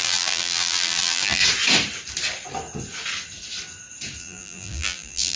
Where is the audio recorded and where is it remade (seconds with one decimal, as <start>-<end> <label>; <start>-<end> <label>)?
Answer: 0.0-1.4 remade; 1.4-4.2 recorded; 4.2-5.4 remade

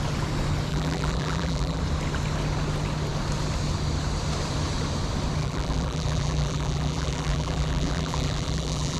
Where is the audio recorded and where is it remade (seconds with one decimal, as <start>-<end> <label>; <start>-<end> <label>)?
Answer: 0.0-0.7 recorded; 0.7-1.8 remade; 1.8-5.4 recorded; 5.4-9.0 remade

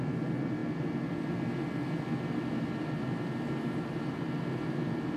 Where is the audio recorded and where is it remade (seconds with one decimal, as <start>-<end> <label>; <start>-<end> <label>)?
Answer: 0.0-5.2 recorded

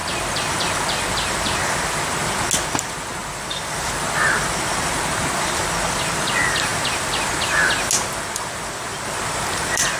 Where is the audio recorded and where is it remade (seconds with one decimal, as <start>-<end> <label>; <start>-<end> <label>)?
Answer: 0.0-0.5 recorded; 0.5-2.2 remade; 2.2-2.8 recorded; 2.8-6.7 remade; 6.7-9.6 recorded; 9.6-10.0 remade

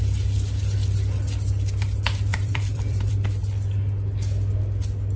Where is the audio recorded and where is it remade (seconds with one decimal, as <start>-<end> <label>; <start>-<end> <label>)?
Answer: 0.0-2.3 recorded; 2.3-3.1 remade; 3.1-5.2 recorded